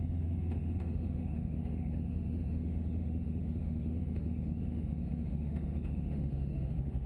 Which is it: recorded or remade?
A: remade